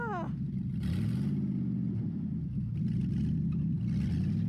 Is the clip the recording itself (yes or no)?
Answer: yes